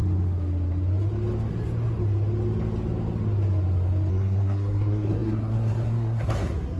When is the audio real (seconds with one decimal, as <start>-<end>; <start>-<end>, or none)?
0.0-4.1